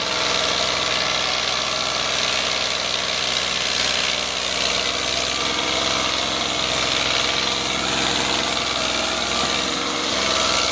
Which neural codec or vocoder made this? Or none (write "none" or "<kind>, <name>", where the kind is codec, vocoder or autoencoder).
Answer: none